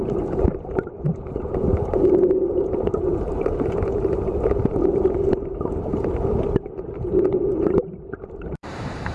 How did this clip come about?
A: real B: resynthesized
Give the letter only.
B